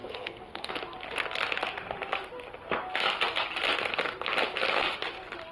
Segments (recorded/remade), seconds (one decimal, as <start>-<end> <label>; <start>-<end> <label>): 0.0-0.7 remade; 0.7-5.5 recorded